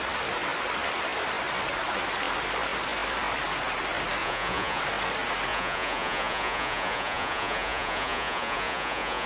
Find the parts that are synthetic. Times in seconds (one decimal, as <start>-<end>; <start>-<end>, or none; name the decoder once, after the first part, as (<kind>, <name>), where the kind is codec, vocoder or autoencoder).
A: 4.2-4.8 (vocoder, Vocos); 5.5-9.3